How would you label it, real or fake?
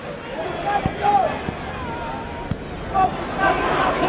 real